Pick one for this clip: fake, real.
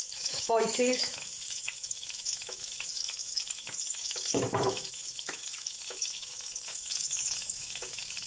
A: fake